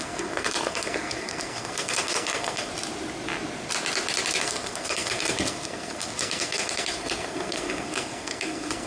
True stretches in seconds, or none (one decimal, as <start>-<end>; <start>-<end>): 2.7-4.4